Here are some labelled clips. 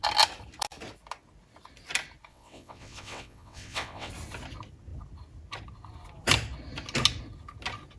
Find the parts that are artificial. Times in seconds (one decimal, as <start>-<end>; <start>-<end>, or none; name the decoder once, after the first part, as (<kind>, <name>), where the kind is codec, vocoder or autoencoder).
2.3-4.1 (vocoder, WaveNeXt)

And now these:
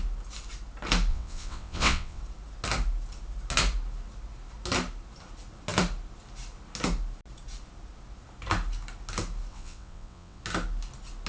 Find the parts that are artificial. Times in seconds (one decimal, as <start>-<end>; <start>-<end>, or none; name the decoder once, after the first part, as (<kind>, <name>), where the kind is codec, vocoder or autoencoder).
1.1-2.2 (vocoder, WaveNeXt); 9.5-10.4

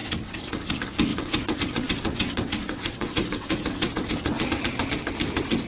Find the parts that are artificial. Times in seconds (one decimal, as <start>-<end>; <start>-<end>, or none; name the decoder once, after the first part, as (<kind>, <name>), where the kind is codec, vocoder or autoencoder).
0.0-0.7 (vocoder, WaveNeXt); 1.1-4.5

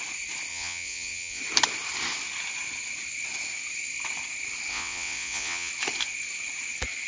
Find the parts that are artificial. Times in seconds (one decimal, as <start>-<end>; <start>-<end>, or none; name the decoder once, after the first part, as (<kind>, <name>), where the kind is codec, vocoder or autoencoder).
0.5-1.4 (vocoder, WaveNeXt); 4.7-5.7

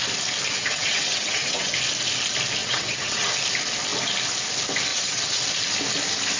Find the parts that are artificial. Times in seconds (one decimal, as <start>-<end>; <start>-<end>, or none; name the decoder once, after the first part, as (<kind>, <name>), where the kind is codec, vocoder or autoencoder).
0.6-1.7 (vocoder, WaveNeXt); 2.6-3.3; 4.9-5.4